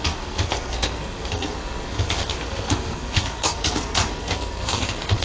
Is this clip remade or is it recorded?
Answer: remade